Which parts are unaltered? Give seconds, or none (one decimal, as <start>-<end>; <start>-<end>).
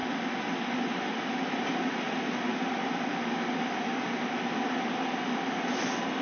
0.0-6.2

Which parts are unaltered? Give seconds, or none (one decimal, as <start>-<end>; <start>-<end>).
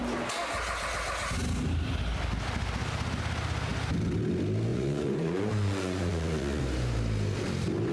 0.0-4.7; 6.6-7.9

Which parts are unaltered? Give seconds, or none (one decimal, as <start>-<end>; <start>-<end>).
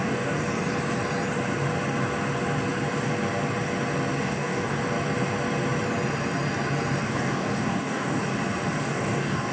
0.4-4.2; 4.8-7.0; 8.2-8.8